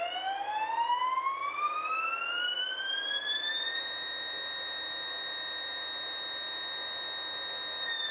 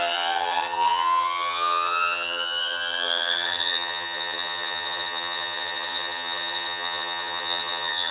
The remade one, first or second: second